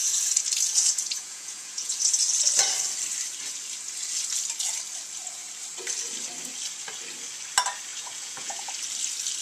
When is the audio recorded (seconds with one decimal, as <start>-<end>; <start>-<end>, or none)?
2.0-7.9; 8.7-9.4